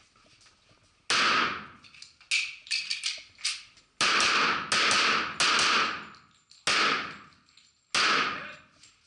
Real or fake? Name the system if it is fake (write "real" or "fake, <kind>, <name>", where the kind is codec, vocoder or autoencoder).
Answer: real